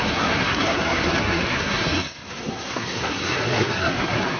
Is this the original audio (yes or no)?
no